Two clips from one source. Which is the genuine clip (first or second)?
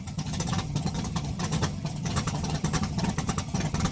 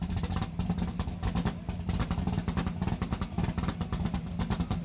second